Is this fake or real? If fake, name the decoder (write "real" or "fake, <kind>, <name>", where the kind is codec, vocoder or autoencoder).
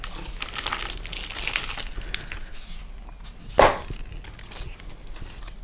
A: real